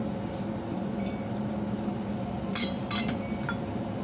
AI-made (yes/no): no